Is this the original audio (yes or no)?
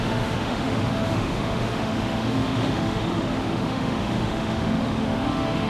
no